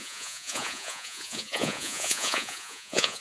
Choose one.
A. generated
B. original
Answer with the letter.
A